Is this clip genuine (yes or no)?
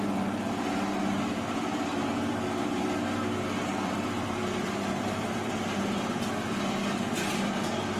no